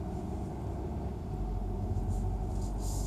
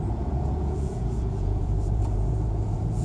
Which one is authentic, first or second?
first